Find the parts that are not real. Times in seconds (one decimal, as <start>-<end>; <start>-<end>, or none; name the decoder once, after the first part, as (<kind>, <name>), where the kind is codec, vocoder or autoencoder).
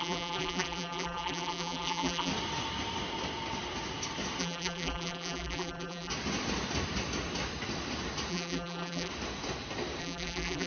0.0-2.3 (vocoder, BigVGAN v2); 4.4-6.1; 8.3-9.1; 10.0-10.7